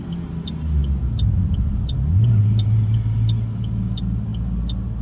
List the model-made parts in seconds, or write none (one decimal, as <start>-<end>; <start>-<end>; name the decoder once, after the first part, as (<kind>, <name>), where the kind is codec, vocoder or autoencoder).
none